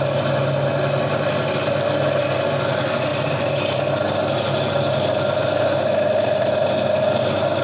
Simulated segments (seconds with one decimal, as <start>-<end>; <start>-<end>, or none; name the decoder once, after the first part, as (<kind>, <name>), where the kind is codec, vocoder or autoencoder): none